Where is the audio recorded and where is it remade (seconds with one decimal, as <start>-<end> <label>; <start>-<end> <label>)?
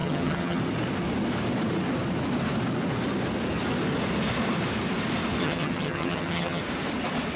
0.0-0.6 remade; 0.6-5.4 recorded; 5.4-6.6 remade; 6.6-7.4 recorded